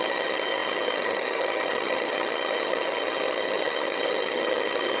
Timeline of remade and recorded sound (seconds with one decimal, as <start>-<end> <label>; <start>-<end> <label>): 0.0-5.0 remade